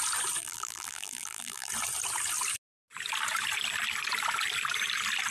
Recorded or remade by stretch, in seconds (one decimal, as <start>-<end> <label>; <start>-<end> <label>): 0.0-0.4 recorded; 0.4-1.7 remade; 1.7-5.3 recorded